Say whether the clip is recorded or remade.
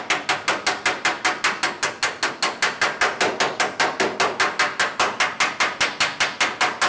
recorded